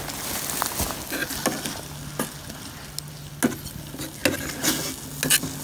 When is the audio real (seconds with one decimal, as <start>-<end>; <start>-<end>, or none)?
0.0-5.6